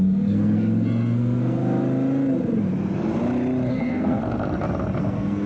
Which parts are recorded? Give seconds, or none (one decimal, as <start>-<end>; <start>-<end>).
1.6-3.7; 4.2-5.0

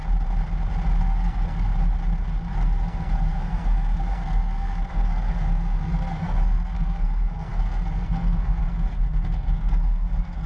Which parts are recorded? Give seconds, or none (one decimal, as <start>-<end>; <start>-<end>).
0.0-1.0; 1.7-2.5

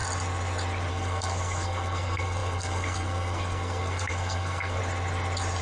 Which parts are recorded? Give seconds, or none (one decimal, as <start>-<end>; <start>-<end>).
0.0-0.9; 4.8-5.6

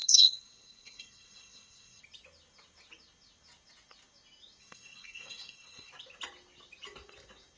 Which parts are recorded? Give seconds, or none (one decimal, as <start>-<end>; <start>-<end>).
2.0-4.6; 5.9-7.6

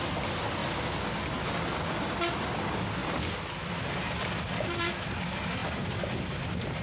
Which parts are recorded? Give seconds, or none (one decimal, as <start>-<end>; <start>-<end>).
0.0-6.8

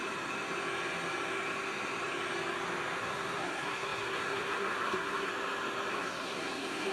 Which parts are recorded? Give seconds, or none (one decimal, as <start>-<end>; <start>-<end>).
0.0-3.0; 5.3-5.9

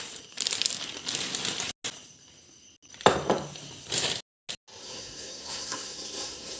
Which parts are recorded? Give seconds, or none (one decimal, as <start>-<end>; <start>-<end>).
0.0-4.8

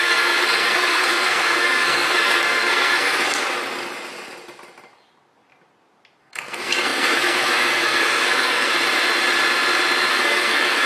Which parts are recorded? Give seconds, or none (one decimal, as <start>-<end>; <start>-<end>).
3.4-6.2; 8.7-10.1